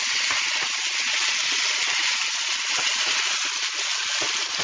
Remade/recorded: recorded